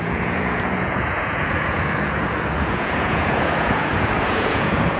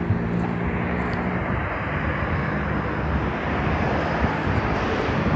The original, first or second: second